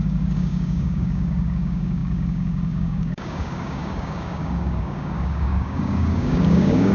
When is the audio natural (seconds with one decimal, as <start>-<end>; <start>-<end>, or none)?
none